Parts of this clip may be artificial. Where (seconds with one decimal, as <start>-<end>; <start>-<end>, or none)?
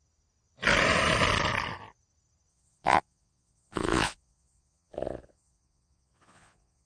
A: 2.5-6.9